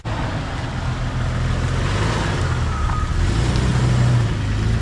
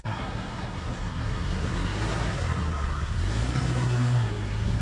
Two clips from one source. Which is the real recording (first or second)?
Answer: first